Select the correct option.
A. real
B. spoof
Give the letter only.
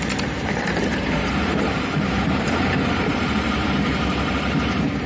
B